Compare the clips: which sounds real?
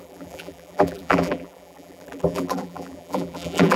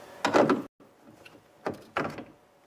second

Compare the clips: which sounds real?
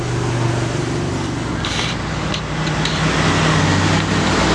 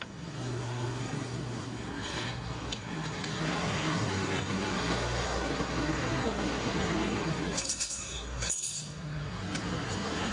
first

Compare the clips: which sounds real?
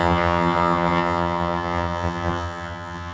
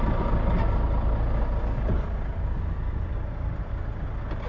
second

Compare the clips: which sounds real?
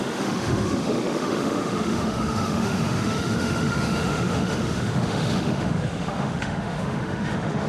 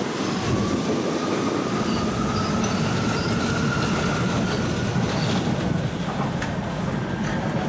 second